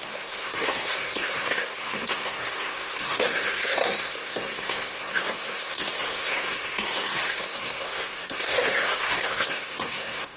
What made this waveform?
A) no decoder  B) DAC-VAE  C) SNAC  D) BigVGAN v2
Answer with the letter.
C